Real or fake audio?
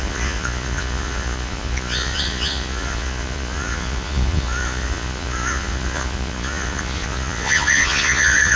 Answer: fake